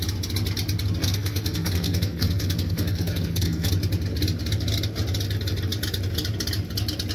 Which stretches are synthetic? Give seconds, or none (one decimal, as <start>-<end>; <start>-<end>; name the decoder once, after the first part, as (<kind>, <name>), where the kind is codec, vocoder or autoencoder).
1.0-3.7 (codec, SNAC)